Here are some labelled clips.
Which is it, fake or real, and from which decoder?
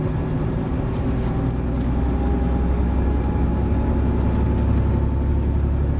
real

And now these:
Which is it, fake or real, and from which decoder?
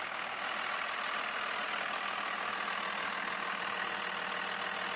real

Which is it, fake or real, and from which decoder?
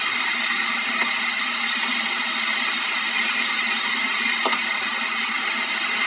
real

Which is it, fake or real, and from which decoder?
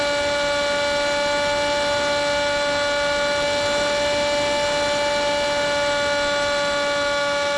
real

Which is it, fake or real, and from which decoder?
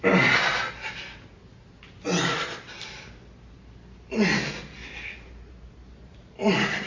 real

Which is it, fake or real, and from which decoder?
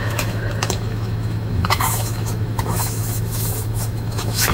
fake, autoencoder, DAC-VAE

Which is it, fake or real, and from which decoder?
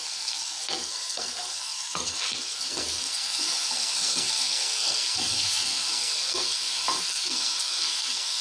fake, codec, SNAC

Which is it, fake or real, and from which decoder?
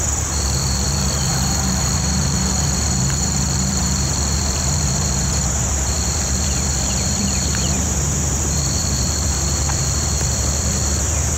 fake, vocoder, BigVGAN v2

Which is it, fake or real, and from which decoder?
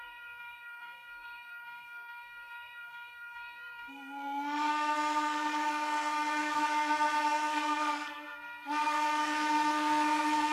fake, codec, SNAC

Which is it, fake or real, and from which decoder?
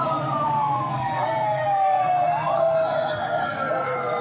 fake, codec, SNAC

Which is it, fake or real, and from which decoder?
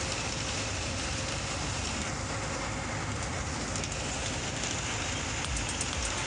real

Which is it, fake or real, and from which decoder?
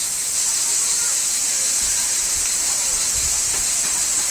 fake, vocoder, BigVGAN v2